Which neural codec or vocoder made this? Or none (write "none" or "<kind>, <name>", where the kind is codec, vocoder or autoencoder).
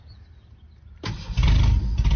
none